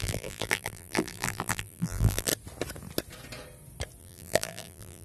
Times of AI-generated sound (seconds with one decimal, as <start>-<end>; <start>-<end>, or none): 0.0-2.3; 4.0-5.0